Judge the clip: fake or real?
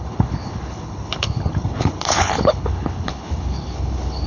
fake